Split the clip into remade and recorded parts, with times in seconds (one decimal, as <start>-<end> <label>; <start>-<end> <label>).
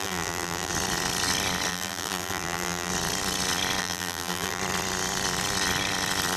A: 0.0-0.7 remade; 0.7-1.7 recorded; 1.7-2.9 remade; 2.9-3.8 recorded; 3.8-4.6 remade; 4.6-6.4 recorded